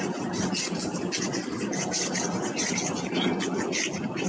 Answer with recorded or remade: recorded